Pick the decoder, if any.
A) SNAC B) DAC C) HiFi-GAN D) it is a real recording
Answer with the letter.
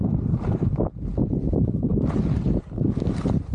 D